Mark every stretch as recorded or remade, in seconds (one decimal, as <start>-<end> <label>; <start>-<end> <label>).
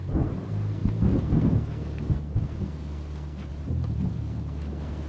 0.0-3.5 remade; 3.5-4.1 recorded; 4.1-5.1 remade